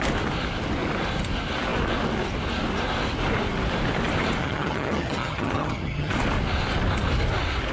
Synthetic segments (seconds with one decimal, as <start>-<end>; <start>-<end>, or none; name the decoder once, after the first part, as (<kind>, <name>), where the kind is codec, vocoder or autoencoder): 4.4-6.1 (vocoder, HiFi-GAN)